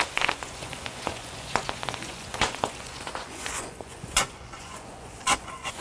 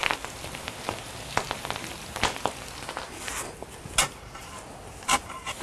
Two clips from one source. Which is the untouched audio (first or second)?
second